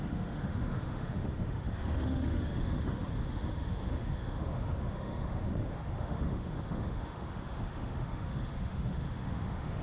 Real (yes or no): no